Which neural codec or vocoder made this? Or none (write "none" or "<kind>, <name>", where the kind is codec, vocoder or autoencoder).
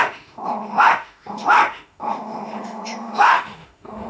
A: autoencoder, DAC-VAE